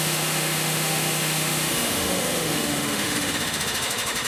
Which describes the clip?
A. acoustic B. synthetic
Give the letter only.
B